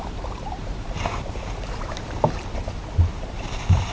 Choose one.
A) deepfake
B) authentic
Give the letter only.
A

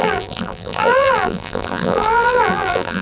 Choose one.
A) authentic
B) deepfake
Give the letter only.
B